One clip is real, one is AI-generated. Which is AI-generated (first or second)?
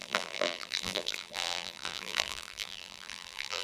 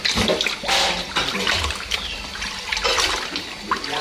first